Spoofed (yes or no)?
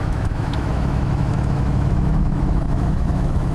yes